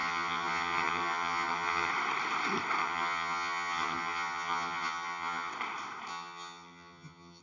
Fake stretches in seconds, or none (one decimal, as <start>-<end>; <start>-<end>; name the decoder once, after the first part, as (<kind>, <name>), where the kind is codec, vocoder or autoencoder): 0.0-1.9 (vocoder, HiFi-GAN); 2.8-5.5; 6.1-7.4